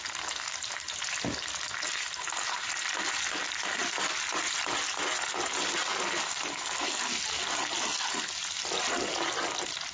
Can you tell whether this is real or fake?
real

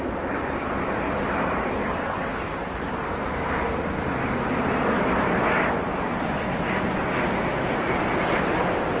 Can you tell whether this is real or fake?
real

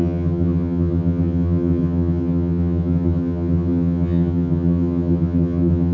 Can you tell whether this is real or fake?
fake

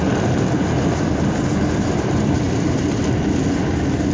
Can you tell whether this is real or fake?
real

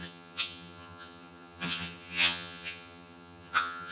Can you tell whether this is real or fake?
fake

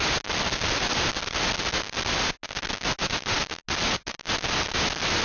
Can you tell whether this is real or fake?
real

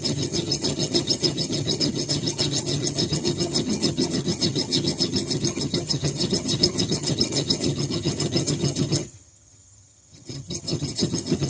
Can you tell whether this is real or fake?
fake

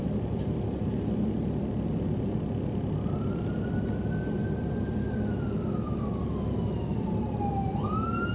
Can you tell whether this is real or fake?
real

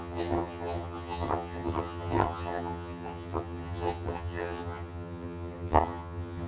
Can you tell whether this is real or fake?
fake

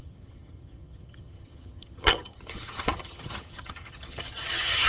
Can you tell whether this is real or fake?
fake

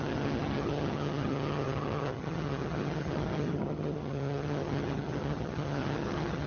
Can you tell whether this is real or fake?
fake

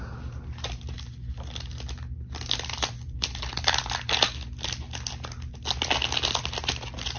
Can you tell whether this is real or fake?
real